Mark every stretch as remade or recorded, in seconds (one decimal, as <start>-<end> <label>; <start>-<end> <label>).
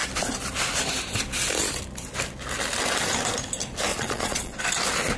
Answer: 0.0-3.9 recorded; 3.9-4.6 remade; 4.6-5.2 recorded